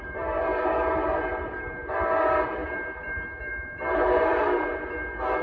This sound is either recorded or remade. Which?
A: remade